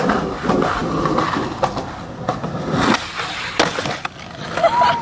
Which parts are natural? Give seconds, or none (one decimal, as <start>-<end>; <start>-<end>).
0.0-5.0